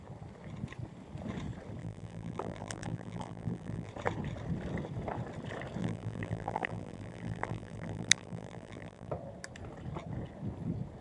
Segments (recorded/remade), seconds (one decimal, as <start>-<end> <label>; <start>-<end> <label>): 0.0-1.8 recorded; 1.8-3.9 remade; 3.9-5.8 recorded; 5.8-9.1 remade; 9.1-11.0 recorded